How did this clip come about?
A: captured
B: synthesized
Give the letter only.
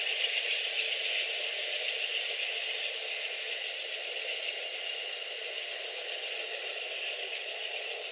A